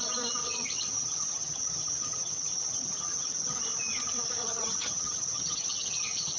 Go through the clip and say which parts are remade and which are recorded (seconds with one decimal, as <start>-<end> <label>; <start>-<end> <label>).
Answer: 0.0-0.4 recorded; 0.4-3.6 remade; 3.6-4.4 recorded; 4.4-6.4 remade